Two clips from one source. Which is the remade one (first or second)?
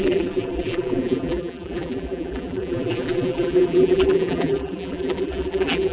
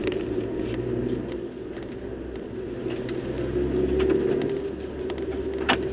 first